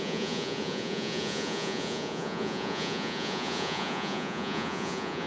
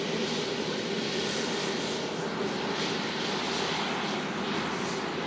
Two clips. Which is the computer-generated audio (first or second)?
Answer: first